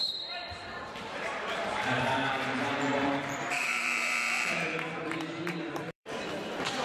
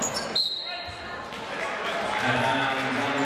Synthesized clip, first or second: first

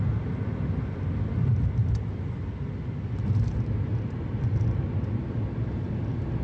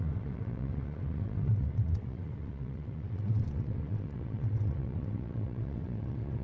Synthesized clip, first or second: second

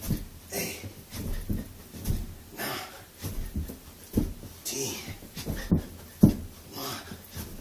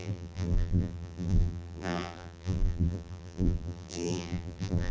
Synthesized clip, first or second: second